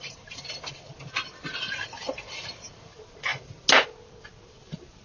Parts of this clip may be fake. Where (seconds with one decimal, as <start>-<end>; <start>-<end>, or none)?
none